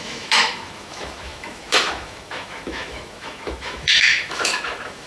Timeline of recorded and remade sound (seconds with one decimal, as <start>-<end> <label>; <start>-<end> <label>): 0.0-5.1 remade

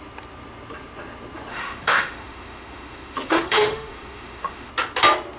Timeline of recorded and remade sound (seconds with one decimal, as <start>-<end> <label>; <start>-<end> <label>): 0.0-1.5 recorded; 1.5-4.7 remade; 4.7-5.4 recorded

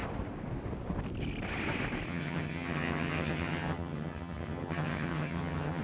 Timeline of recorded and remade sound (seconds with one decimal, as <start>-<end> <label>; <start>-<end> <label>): 0.0-2.1 recorded; 2.1-5.8 remade

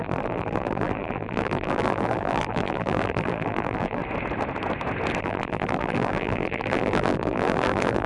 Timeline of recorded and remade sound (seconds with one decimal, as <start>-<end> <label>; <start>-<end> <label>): 0.0-4.0 remade; 4.0-5.2 recorded; 5.2-8.1 remade

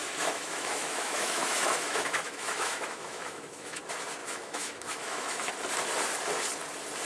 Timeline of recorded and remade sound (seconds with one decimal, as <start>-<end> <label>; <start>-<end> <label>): 0.0-3.8 remade; 3.8-4.2 recorded; 4.2-5.5 remade; 5.5-7.0 recorded